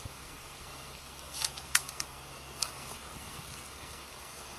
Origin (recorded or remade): remade